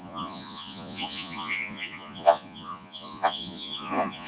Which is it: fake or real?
fake